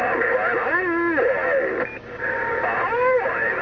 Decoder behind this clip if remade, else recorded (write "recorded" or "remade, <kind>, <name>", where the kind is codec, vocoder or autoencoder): recorded